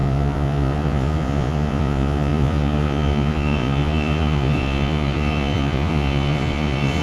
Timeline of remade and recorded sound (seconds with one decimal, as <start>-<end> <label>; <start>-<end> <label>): 0.0-7.0 remade